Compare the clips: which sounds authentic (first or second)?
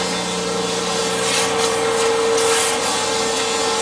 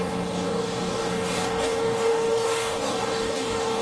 first